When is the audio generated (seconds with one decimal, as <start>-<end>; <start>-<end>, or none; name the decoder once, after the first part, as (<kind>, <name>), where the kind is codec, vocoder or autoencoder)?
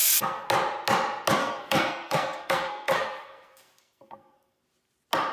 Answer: 0.0-0.5 (codec, SNAC); 1.4-4.6